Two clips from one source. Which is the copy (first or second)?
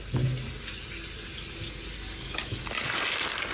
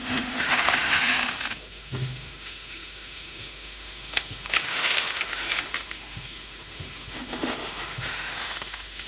second